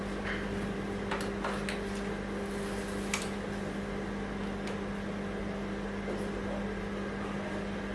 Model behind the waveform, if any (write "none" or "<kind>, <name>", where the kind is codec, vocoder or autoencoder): none